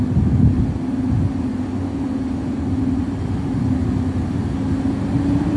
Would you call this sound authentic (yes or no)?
yes